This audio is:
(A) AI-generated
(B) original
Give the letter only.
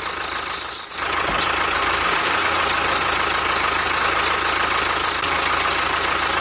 B